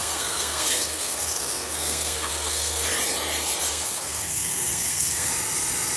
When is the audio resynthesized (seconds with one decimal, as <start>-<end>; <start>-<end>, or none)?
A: 0.0-2.9; 3.7-5.3